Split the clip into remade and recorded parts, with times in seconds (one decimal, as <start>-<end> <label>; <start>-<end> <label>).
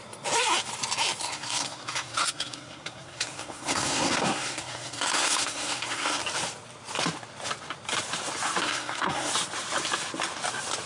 0.0-1.2 recorded; 1.2-6.2 remade; 6.2-8.6 recorded; 8.6-9.3 remade; 9.3-10.9 recorded